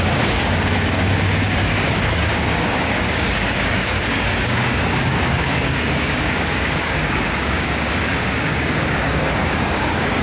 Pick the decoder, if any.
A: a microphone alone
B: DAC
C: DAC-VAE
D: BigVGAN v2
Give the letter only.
B